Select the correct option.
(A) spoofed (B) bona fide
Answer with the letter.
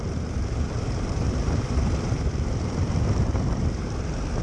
A